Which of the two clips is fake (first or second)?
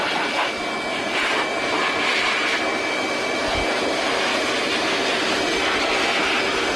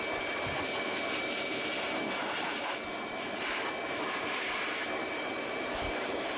second